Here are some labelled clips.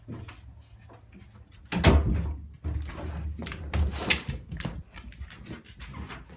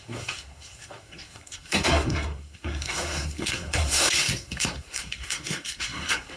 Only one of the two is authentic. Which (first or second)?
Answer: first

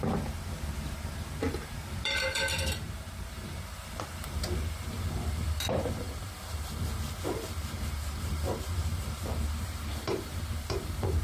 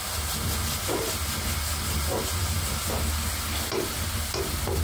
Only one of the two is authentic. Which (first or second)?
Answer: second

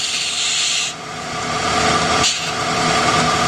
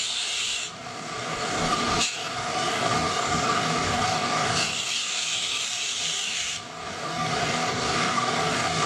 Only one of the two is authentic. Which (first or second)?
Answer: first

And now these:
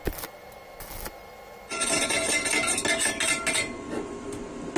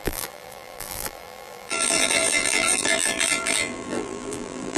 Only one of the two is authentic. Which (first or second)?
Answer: first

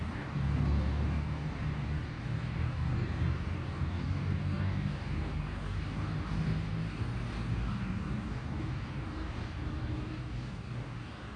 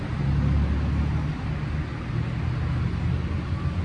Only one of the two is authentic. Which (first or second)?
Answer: second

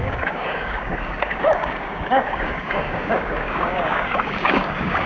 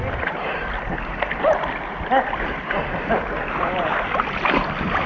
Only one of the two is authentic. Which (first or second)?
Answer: second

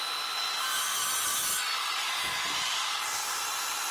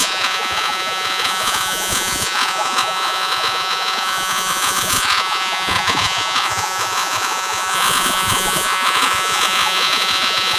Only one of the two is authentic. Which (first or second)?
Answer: first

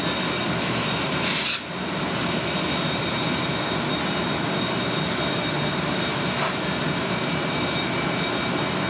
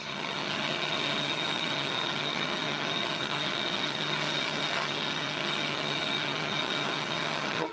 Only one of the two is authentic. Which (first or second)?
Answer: first